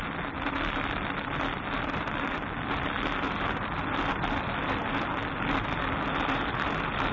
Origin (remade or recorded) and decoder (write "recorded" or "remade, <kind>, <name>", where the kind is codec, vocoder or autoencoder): recorded